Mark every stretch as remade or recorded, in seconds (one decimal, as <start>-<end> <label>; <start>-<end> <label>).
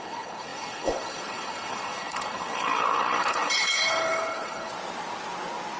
0.0-4.7 remade; 4.7-5.8 recorded